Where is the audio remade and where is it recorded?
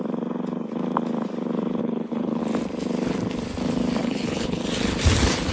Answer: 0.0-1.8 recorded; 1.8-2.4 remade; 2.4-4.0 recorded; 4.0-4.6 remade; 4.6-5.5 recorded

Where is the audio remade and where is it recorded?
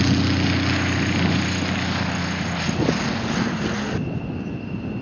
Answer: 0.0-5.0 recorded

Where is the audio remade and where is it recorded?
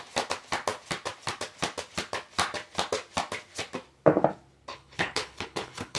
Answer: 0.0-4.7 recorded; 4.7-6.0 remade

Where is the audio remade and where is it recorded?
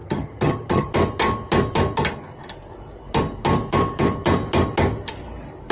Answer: 0.0-0.9 remade; 0.9-5.7 recorded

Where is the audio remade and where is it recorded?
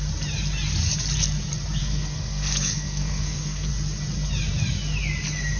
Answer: 0.0-1.8 recorded; 1.8-3.7 remade; 3.7-5.6 recorded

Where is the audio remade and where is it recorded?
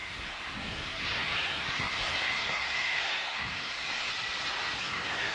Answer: 0.0-4.1 remade; 4.1-4.8 recorded; 4.8-5.3 remade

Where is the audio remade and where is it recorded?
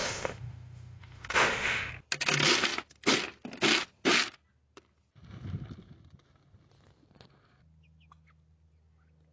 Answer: 0.0-1.9 remade; 1.9-9.3 recorded